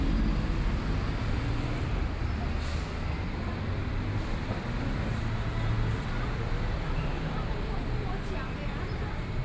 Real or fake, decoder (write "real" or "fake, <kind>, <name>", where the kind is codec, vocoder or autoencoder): real